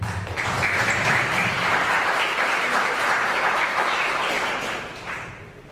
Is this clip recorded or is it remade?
remade